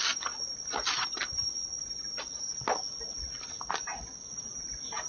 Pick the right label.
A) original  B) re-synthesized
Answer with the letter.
A